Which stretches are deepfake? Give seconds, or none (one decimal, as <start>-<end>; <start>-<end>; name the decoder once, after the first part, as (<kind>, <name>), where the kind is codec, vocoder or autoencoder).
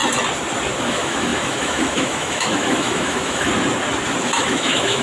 0.8-3.5 (autoencoder, DAC-VAE); 4.2-5.0